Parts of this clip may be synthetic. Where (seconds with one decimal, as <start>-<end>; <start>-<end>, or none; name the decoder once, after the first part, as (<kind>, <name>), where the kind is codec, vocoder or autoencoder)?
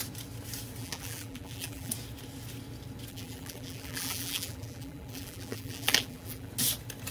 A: 0.8-1.9 (vocoder, BigVGAN v2); 3.1-6.5